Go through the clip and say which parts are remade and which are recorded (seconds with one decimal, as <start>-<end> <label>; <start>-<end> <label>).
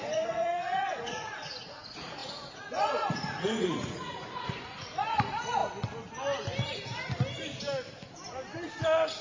0.0-5.6 remade; 5.6-9.2 recorded